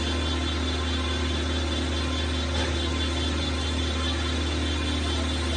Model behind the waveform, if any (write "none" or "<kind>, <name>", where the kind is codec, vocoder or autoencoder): none